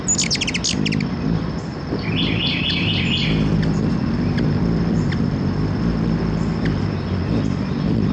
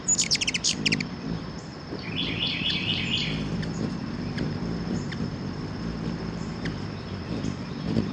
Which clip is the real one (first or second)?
first